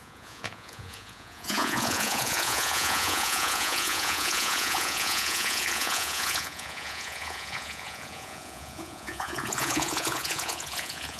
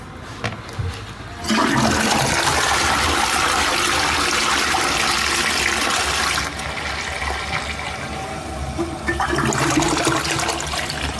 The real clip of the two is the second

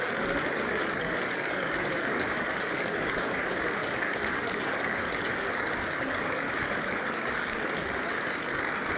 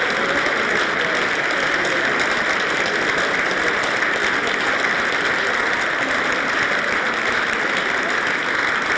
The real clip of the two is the second